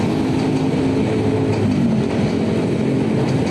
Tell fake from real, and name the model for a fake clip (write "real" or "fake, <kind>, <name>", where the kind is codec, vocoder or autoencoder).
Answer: real